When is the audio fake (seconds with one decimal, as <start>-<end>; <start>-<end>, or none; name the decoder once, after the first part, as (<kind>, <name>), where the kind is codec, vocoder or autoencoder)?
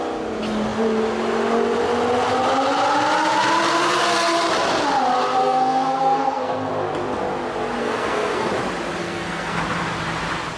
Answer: 5.4-6.7 (codec, SNAC); 7.8-8.5; 9.0-9.6